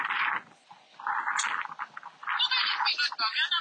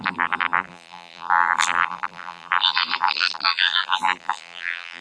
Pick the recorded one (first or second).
first